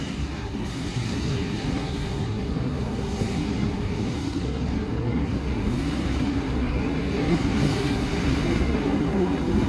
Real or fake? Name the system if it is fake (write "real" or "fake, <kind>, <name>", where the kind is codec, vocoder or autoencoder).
fake, codec, SNAC